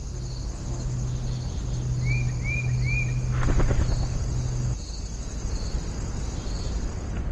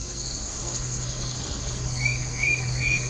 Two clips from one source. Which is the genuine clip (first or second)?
first